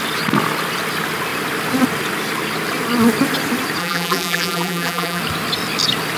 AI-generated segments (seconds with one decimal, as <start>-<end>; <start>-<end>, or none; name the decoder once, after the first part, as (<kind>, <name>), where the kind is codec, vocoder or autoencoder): 3.8-5.2 (vocoder, BigVGAN v2)